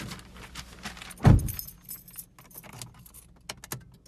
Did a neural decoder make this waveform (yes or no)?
no